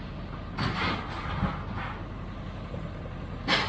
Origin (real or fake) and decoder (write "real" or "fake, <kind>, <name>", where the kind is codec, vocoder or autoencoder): real